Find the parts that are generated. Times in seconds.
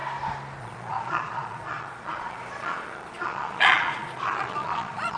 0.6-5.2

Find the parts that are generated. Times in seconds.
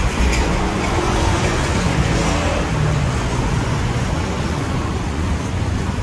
0.0-2.2; 2.9-6.0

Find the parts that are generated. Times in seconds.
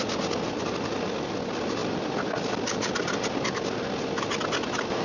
none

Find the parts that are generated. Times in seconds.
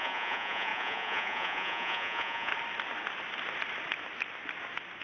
0.0-2.5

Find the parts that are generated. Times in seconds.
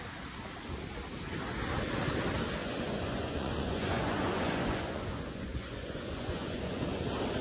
2.6-7.0